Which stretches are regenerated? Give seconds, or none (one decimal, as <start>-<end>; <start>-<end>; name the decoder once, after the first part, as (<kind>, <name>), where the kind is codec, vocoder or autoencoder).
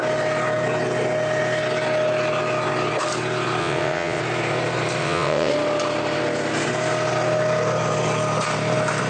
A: 3.6-4.2 (vocoder, WaveNeXt); 5.0-5.5